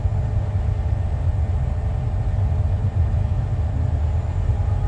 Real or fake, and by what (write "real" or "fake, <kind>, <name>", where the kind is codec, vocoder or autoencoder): real